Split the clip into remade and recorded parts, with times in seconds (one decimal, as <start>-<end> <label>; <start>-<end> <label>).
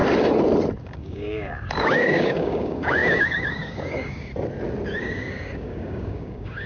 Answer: 0.0-0.8 recorded; 0.8-4.3 remade; 4.3-5.0 recorded; 5.0-6.7 remade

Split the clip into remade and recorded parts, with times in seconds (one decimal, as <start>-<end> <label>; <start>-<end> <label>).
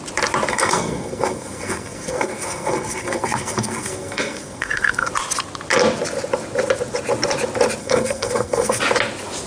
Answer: 0.0-0.5 recorded; 0.5-5.1 remade; 5.1-7.8 recorded; 7.8-8.8 remade; 8.8-9.5 recorded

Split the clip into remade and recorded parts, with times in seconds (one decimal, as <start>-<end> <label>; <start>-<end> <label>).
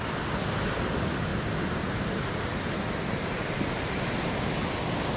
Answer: 0.0-1.3 recorded; 1.3-4.4 remade; 4.4-5.2 recorded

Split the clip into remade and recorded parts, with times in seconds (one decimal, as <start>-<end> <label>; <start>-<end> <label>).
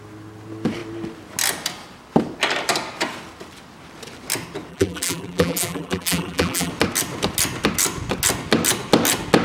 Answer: 0.0-4.7 recorded; 4.7-6.7 remade; 6.7-9.4 recorded